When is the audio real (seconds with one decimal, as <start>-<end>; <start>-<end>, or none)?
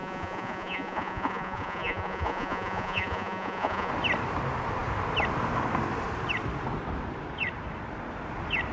3.9-8.7